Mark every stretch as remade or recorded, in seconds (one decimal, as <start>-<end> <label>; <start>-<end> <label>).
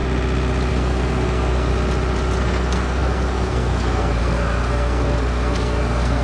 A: 0.0-0.7 recorded; 0.7-1.7 remade; 1.7-2.4 recorded; 2.4-6.2 remade